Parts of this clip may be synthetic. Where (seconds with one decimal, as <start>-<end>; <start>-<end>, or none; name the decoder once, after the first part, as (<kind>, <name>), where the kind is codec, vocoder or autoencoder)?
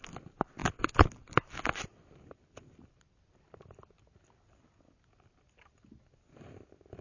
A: none